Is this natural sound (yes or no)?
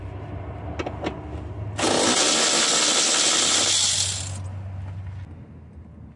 yes